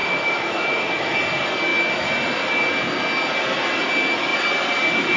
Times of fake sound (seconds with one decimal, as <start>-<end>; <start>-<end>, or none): 0.0-1.2